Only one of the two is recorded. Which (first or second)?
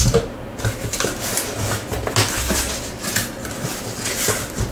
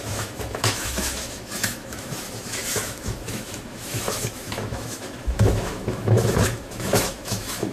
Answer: first